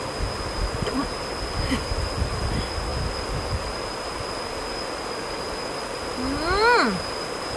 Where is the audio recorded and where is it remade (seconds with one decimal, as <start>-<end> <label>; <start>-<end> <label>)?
0.0-7.6 recorded